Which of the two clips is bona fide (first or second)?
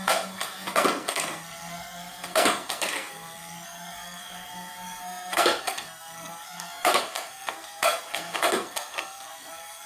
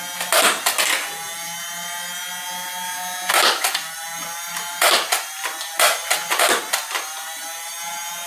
second